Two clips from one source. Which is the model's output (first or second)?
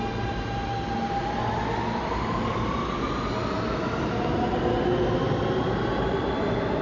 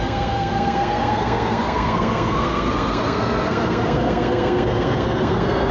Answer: second